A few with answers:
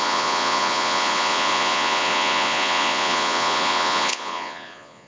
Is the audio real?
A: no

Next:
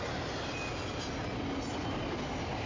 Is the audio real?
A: yes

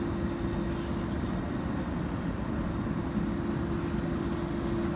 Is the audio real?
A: yes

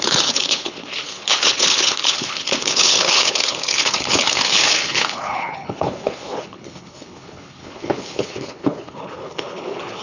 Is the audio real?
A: no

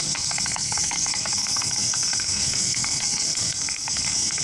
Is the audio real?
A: no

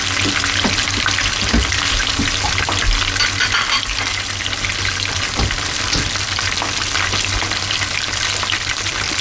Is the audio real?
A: yes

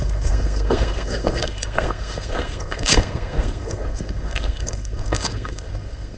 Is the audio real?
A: no